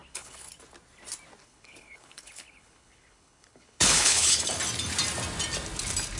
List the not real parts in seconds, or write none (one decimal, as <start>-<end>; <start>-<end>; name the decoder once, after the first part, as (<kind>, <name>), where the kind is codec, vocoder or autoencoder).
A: 0.0-0.5 (codec, HILCodec); 1.4-4.4